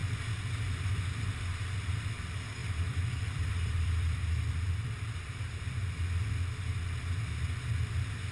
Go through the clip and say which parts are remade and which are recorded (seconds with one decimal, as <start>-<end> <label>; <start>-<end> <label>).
0.0-1.5 recorded; 1.5-2.1 remade; 2.1-2.6 recorded; 2.6-5.8 remade; 5.8-8.3 recorded